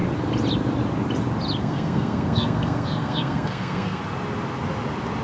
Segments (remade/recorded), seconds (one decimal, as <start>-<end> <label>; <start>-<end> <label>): 0.0-1.6 recorded; 1.6-4.0 remade; 4.0-5.2 recorded